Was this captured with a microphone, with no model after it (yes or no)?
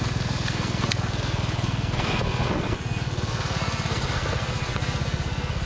no